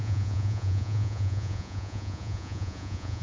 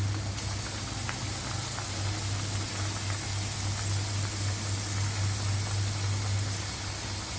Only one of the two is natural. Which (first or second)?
second